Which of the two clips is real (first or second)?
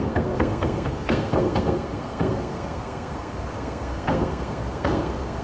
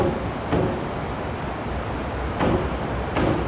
second